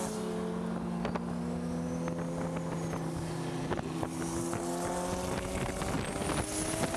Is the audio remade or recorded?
recorded